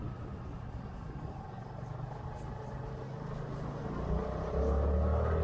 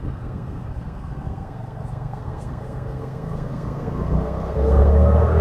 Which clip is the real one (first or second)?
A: first